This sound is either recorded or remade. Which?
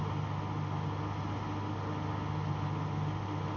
recorded